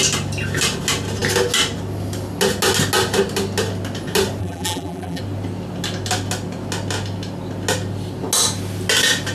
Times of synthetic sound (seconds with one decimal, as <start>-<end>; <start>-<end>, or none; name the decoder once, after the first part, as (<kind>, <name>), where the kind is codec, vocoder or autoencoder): 4.4-5.2 (vocoder, BigVGAN v2)